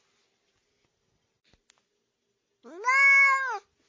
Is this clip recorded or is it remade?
recorded